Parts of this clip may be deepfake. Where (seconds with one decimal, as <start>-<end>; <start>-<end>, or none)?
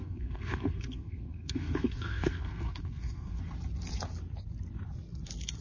0.0-3.4